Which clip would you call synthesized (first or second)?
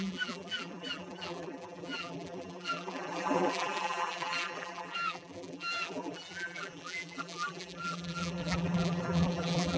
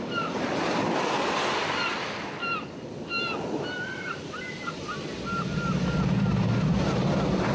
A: first